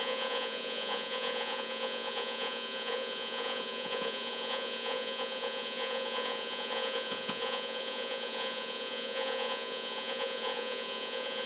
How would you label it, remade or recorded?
remade